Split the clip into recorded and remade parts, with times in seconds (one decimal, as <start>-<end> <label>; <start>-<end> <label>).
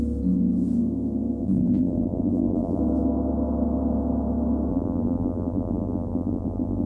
0.0-1.4 recorded; 1.4-2.8 remade; 2.8-4.7 recorded; 4.7-6.9 remade